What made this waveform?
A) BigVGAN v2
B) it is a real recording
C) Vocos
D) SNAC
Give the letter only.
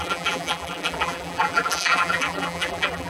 A